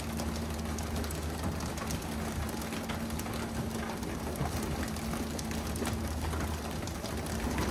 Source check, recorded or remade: recorded